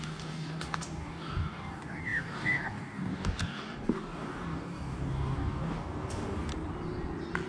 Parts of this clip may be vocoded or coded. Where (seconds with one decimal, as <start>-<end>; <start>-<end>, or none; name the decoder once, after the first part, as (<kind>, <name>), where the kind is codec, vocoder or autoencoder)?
0.0-6.5 (codec, DAC)